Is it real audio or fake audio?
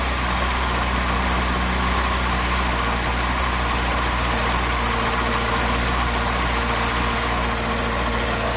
real